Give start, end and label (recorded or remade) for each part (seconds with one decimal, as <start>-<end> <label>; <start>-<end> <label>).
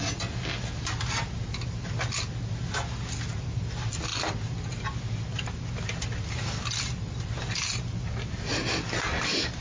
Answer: 0.0-9.6 recorded